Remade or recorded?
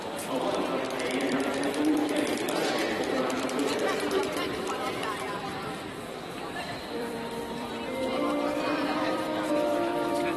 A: remade